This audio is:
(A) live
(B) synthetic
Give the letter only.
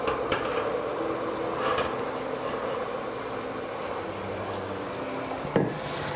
A